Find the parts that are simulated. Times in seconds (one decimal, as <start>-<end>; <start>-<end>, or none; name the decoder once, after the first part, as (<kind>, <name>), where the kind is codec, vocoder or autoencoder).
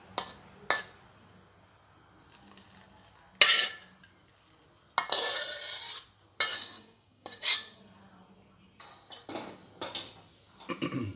6.5-7.8 (codec, DAC)